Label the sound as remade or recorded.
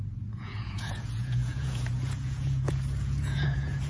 remade